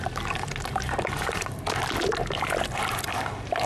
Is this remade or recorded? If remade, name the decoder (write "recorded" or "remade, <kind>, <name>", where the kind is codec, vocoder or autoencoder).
recorded